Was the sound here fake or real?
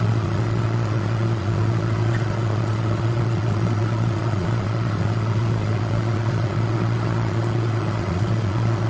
fake